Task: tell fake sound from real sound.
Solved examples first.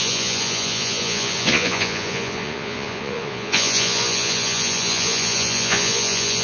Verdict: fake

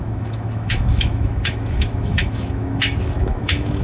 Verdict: fake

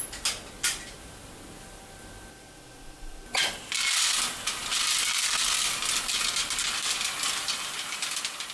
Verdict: real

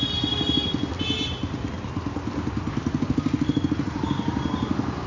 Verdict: real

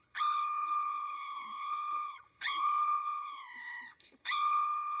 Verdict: fake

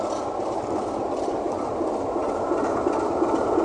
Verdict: real